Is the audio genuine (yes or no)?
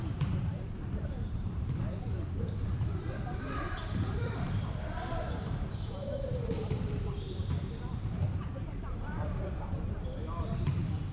no